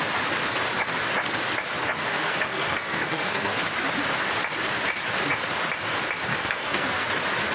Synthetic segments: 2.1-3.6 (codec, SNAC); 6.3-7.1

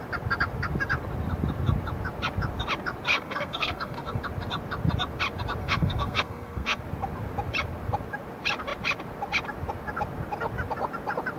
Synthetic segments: 3.1-4.2 (codec, SNAC); 5.6-6.8